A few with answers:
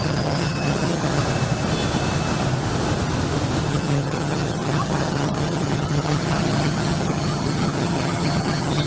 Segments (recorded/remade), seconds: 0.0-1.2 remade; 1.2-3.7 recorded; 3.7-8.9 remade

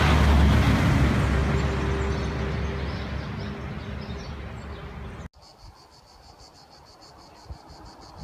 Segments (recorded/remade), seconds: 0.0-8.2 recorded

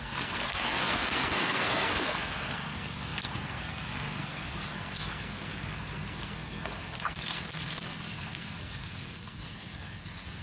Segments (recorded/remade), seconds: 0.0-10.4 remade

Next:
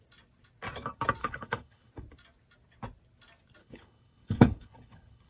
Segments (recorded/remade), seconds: 0.0-1.2 recorded; 1.2-1.9 remade; 1.9-3.6 recorded; 3.6-5.3 remade